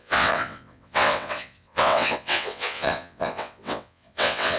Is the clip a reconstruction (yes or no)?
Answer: yes